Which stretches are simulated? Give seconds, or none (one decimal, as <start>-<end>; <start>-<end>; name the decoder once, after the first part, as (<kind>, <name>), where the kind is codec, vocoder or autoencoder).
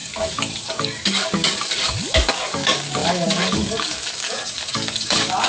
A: 0.0-5.5 (codec, DAC)